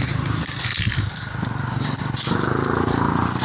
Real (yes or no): yes